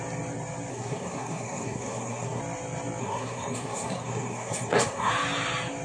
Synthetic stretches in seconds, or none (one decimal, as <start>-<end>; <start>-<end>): 0.7-2.4; 3.0-5.1

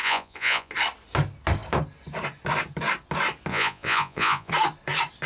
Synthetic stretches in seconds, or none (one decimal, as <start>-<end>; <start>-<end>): 0.0-0.7; 3.5-4.5

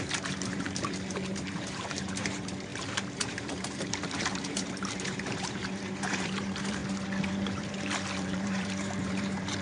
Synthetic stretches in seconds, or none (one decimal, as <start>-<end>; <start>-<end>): 0.0-6.8; 7.3-9.6

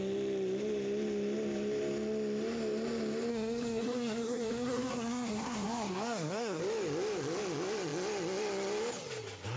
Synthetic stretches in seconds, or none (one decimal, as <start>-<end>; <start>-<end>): 3.3-6.6

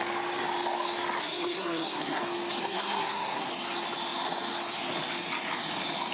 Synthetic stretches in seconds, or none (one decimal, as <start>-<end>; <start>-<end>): 1.2-2.2; 2.6-3.5

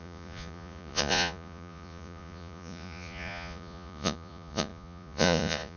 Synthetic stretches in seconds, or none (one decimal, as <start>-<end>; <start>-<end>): 0.0-5.8

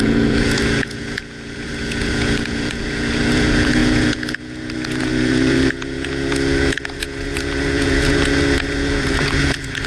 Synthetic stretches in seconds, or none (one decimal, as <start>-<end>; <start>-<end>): 0.0-9.9